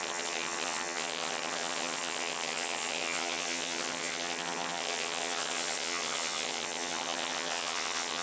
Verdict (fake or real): fake